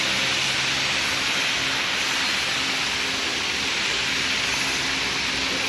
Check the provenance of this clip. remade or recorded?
recorded